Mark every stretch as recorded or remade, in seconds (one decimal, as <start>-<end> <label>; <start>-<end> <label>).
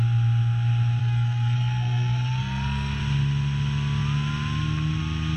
0.0-1.0 recorded; 1.0-3.0 remade; 3.0-5.4 recorded